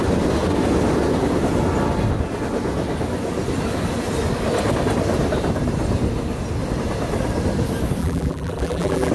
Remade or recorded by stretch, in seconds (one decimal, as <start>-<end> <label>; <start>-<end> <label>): 0.0-8.0 recorded; 8.0-9.1 remade